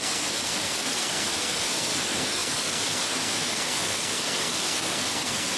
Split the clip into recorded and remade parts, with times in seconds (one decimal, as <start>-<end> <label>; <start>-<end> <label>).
0.0-5.6 remade